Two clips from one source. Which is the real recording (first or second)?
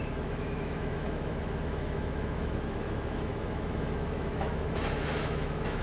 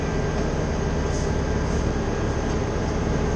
second